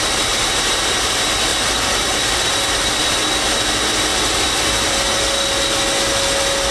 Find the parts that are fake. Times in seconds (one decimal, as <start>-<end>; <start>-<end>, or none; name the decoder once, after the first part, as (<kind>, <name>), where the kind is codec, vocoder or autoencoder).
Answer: 1.5-3.1 (vocoder, BigVGAN v2); 4.1-5.2